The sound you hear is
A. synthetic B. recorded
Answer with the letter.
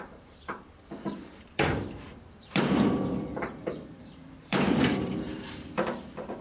A